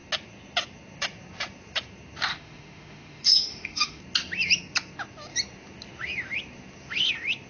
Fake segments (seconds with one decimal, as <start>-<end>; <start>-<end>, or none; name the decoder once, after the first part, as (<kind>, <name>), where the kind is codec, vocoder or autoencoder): 2.3-4.0 (autoencoder, DAC-VAE)